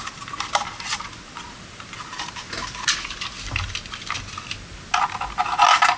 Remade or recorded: recorded